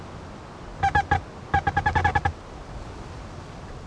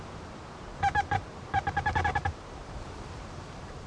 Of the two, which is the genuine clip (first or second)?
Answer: first